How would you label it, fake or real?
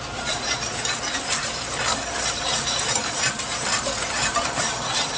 fake